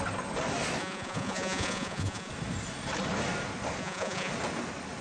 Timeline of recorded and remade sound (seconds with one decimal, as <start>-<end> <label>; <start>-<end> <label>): 0.0-0.8 recorded; 0.8-2.3 remade; 2.3-3.8 recorded; 3.8-4.3 remade; 4.3-5.0 recorded